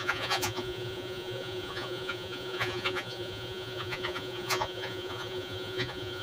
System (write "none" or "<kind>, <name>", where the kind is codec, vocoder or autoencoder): vocoder, Vocos